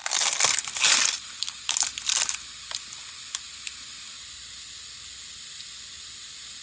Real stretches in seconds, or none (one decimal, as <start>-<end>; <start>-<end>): 0.0-6.6